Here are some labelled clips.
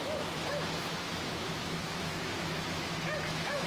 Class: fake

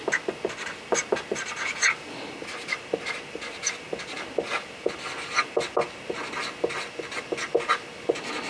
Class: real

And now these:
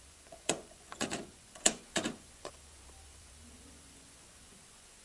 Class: fake